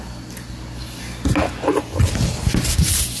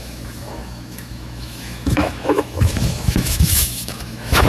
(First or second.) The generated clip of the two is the second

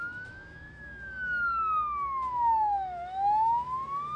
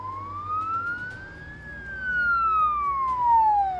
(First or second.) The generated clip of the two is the first